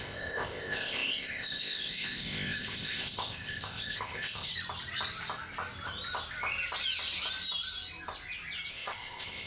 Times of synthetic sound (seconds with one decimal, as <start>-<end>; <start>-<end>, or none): 0.0-4.5; 8.7-9.5